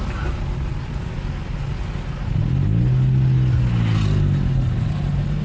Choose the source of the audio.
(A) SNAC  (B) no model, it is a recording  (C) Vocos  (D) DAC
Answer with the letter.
B